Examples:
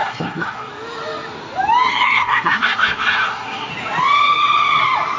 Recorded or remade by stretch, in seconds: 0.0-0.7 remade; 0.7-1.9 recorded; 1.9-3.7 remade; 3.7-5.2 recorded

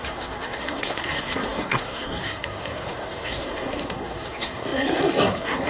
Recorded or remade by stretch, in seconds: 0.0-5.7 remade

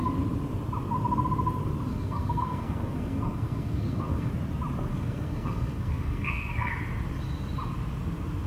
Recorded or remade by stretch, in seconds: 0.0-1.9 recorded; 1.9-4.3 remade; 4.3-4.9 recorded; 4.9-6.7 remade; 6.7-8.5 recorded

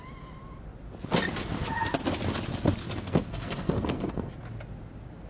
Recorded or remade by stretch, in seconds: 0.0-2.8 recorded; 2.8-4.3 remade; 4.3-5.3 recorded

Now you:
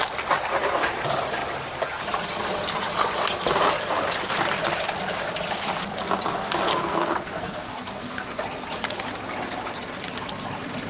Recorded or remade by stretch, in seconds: 0.0-6.7 recorded; 6.7-8.4 remade; 8.4-10.9 recorded